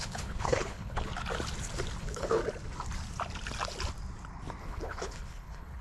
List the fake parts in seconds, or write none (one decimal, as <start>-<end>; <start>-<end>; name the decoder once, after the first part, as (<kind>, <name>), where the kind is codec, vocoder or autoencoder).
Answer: 0.0-1.1 (codec, HILCodec); 2.0-2.4; 4.6-5.8